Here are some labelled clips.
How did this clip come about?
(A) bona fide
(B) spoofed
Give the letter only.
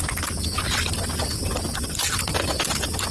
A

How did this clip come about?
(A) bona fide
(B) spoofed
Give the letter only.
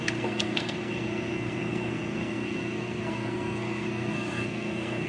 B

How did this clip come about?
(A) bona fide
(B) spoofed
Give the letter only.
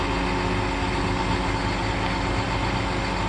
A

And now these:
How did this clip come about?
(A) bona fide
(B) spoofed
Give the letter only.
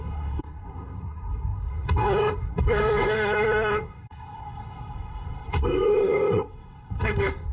B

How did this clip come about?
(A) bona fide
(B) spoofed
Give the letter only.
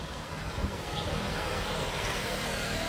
B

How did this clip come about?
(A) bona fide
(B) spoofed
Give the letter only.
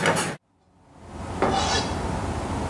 A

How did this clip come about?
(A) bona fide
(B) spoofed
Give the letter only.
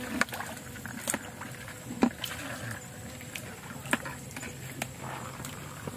A